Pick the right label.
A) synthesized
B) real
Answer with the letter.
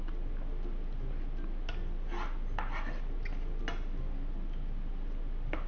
B